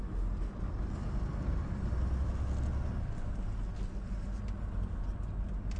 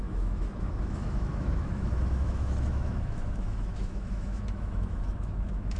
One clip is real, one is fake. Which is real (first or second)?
first